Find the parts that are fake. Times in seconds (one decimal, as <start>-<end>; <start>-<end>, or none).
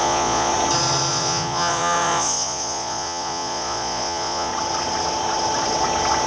0.0-0.5; 1.1-4.5